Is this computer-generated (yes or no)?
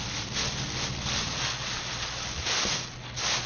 no